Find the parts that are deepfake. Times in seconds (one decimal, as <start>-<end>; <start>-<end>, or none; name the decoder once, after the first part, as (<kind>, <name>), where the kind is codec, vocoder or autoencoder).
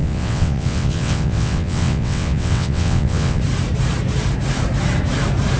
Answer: 0.0-3.4 (vocoder, WaveNeXt)